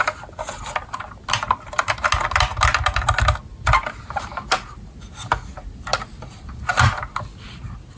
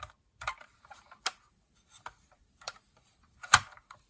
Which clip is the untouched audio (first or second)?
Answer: first